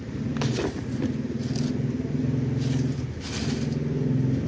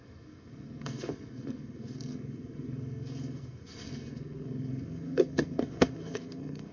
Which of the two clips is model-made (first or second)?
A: second